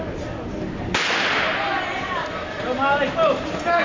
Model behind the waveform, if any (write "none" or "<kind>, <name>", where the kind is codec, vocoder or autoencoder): none